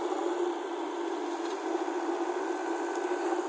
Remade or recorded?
recorded